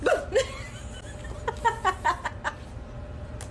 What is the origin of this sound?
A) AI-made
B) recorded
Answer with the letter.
B